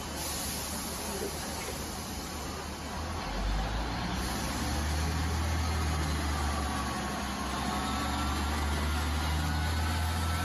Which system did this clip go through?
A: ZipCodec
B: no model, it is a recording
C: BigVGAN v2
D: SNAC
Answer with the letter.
B